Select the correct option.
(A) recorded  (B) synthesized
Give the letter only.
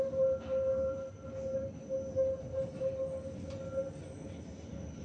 A